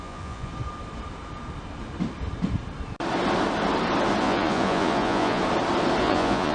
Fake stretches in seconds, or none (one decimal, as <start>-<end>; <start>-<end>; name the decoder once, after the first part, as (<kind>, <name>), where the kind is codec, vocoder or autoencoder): 0.0-0.5 (vocoder, Vocos); 4.2-5.4; 6.0-6.5